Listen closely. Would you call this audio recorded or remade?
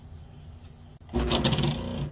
recorded